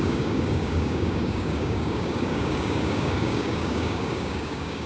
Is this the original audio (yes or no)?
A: no